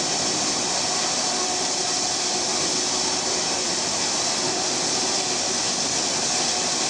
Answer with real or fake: real